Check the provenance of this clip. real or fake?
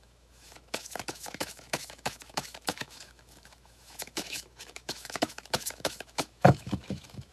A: fake